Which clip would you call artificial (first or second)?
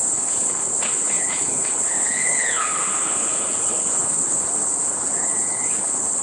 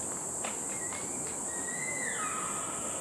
first